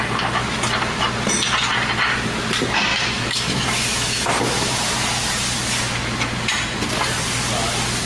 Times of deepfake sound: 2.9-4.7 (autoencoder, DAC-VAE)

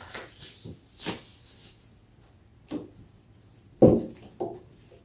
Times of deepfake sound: none

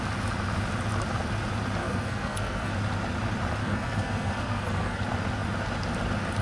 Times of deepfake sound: 1.8-2.7 (codec, SNAC); 3.6-5.0

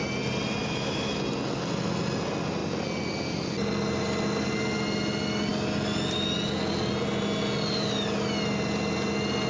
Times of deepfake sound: 0.6-1.2 (autoencoder, DAC-VAE)

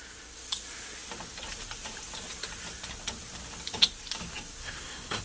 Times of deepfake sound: 4.6-5.2 (codec, SNAC)

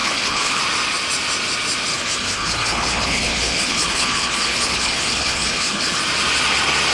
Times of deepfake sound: 0.0-0.6 (codec, HILCodec); 1.9-6.0